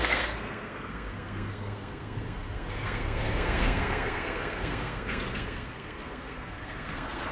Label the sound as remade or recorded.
remade